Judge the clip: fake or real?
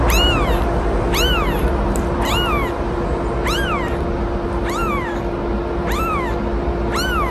real